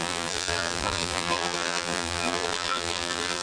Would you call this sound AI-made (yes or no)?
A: yes